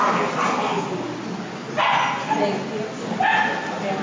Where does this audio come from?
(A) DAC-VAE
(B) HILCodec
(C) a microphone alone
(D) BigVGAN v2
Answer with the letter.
C